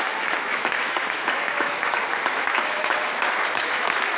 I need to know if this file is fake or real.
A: fake